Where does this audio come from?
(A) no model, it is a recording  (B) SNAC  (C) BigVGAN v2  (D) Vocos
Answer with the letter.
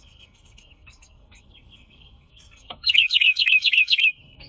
B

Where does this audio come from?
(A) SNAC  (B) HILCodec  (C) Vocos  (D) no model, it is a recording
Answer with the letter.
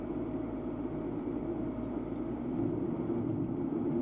D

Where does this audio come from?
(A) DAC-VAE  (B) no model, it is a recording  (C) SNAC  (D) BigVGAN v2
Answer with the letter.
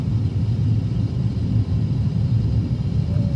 D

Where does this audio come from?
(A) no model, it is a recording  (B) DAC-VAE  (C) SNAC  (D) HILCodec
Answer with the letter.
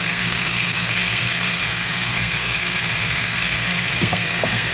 C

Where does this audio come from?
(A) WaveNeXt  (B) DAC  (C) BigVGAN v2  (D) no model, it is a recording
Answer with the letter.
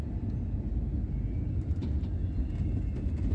D